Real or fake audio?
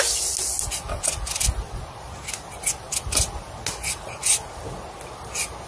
real